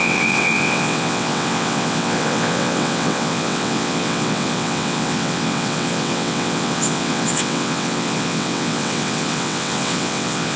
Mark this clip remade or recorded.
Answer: remade